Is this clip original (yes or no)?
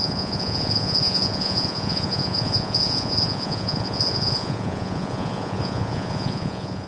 no